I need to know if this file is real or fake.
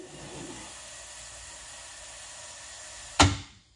real